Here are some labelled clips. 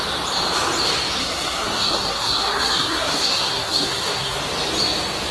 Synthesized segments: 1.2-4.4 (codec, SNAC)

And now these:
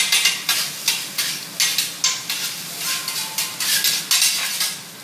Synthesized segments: none

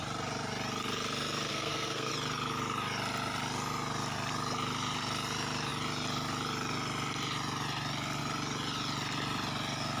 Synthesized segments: 1.5-2.1 (codec, SNAC)

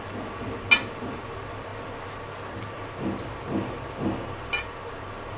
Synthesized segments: none

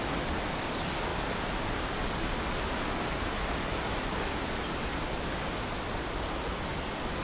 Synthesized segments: none

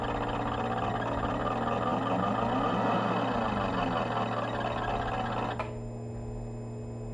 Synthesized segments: none

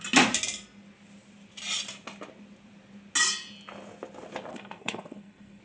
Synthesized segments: 4.5-5.6 (codec, SNAC)